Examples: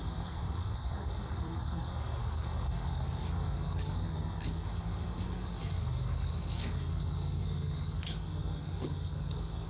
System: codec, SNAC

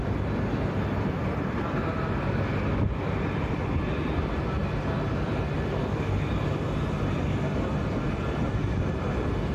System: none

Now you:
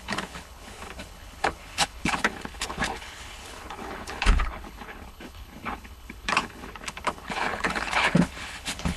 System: codec, HILCodec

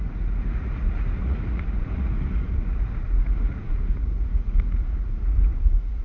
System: vocoder, Vocos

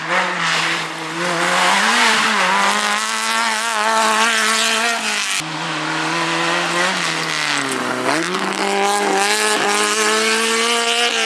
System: none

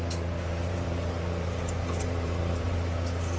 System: vocoder, BigVGAN v2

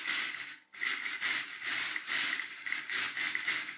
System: none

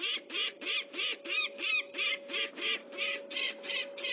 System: none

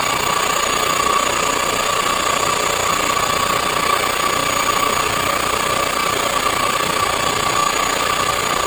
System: none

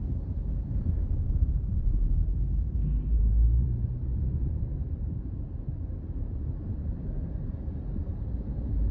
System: vocoder, BigVGAN v2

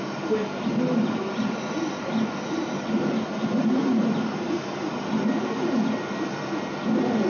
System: none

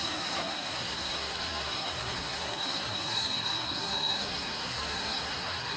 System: codec, SNAC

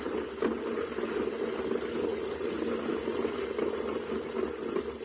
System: none